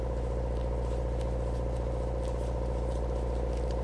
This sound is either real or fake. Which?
real